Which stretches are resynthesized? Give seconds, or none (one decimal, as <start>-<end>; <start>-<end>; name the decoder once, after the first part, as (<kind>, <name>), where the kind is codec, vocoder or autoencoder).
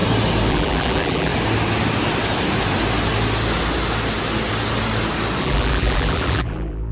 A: 0.5-1.3 (vocoder, BigVGAN v2); 5.4-6.9